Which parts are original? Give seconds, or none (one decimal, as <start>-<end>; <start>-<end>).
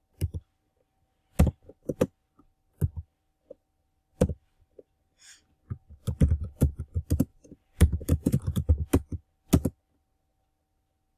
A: 0.0-7.3; 8.7-11.2